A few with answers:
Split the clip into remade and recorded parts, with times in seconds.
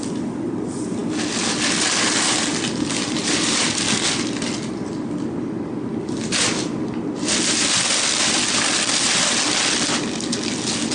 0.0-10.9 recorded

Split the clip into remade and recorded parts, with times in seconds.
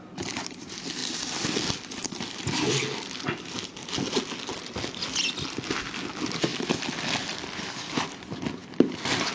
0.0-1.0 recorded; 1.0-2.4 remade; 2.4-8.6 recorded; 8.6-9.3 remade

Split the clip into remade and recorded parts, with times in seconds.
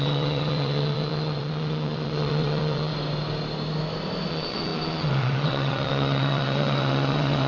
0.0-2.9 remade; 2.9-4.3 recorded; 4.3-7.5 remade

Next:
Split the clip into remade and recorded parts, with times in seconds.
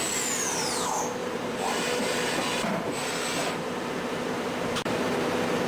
0.0-1.2 recorded; 1.2-2.4 remade; 2.4-3.4 recorded; 3.4-4.9 remade; 4.9-5.7 recorded